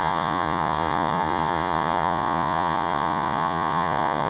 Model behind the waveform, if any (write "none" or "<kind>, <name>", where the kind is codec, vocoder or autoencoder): vocoder, Vocos